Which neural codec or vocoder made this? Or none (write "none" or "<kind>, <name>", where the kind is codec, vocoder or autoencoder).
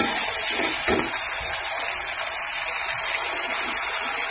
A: none